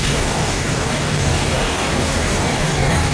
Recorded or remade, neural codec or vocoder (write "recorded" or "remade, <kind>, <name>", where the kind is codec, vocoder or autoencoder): remade, codec, DAC